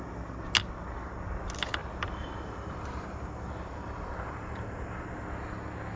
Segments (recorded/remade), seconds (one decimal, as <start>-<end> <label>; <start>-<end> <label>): 0.0-1.8 recorded; 1.8-4.9 remade; 4.9-6.0 recorded